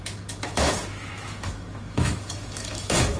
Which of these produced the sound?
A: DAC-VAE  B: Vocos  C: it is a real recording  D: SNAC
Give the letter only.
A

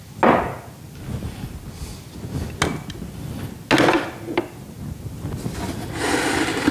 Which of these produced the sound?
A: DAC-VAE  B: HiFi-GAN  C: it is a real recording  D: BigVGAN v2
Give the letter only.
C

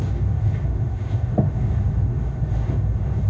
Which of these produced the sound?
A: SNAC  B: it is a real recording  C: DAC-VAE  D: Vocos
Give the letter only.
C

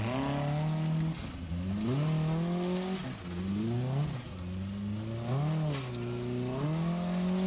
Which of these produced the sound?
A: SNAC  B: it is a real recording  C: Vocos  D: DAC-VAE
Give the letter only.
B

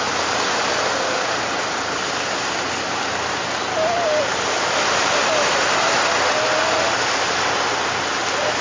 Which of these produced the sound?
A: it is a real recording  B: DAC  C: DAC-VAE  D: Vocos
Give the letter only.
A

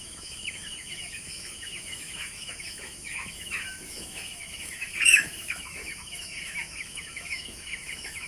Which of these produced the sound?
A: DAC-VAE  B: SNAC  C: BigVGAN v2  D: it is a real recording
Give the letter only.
A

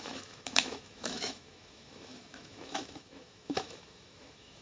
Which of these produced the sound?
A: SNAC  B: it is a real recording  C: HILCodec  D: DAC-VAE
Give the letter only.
D